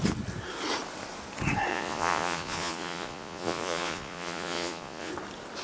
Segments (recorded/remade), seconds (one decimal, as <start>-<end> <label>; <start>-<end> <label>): 0.0-1.7 recorded; 1.7-5.1 remade; 5.1-5.6 recorded